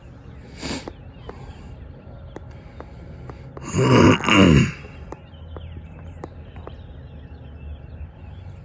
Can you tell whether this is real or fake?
real